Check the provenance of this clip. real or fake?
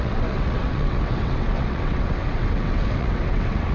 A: fake